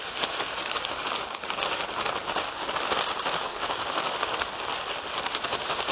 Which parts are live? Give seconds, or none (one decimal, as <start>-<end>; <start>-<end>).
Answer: 0.0-0.5; 1.6-3.5; 4.5-5.9